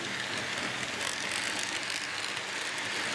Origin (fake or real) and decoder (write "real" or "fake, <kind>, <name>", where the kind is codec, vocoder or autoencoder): real